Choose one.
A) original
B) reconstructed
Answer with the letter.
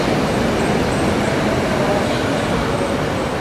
B